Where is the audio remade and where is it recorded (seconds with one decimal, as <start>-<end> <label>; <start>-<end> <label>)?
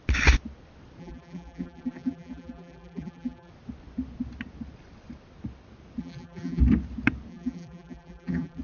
0.0-1.0 recorded; 1.0-3.5 remade; 3.5-6.0 recorded; 6.0-6.6 remade; 6.6-7.3 recorded; 7.3-8.6 remade